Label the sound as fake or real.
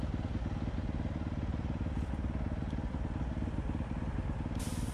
real